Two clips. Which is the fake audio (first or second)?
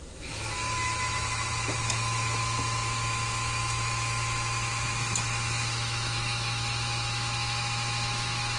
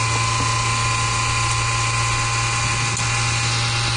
first